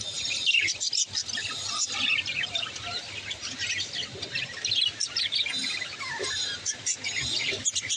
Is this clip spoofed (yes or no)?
no